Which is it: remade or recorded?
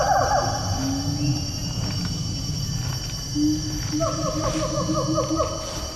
recorded